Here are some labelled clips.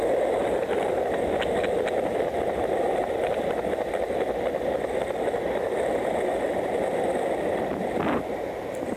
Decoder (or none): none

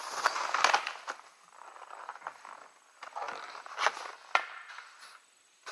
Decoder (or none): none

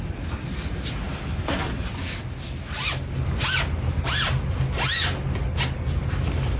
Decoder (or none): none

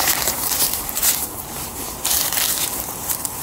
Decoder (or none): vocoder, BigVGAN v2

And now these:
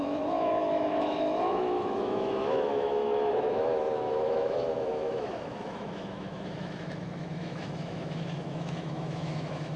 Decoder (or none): autoencoder, DAC-VAE